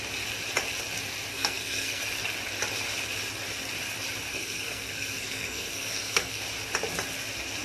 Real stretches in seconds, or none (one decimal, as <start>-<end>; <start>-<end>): 0.0-1.3; 2.0-4.3; 6.4-7.6